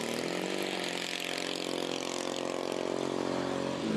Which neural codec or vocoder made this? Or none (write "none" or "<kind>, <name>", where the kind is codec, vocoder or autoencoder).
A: none